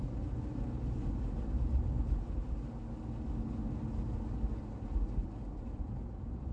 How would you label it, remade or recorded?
recorded